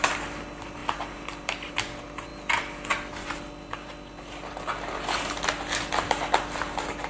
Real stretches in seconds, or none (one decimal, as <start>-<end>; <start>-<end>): 0.0-7.1